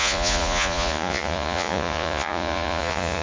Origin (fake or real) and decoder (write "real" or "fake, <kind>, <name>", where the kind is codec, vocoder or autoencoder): fake, vocoder, Vocos